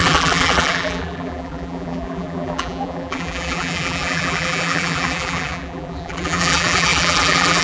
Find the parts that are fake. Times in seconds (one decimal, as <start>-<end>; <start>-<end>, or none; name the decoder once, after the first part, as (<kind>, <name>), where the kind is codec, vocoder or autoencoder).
0.0-7.6 (vocoder, BigVGAN v2)